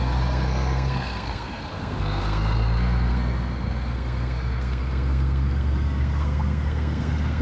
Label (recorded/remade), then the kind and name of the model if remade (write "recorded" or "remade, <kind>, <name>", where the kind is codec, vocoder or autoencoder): remade, codec, SNAC